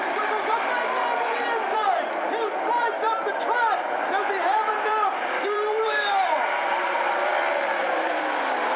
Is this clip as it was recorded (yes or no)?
no